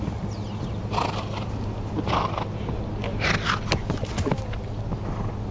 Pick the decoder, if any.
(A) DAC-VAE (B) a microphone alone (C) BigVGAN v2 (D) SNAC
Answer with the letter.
B